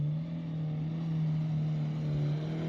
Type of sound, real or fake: real